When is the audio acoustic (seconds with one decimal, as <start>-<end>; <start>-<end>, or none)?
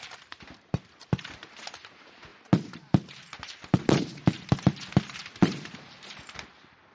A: 0.0-5.2; 6.5-6.9